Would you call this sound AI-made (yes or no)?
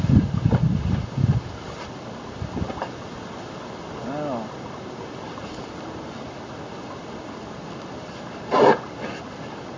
no